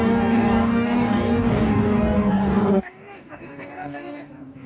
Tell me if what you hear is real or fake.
fake